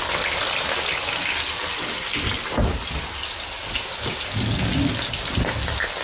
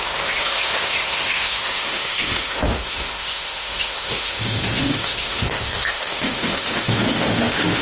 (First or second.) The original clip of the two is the first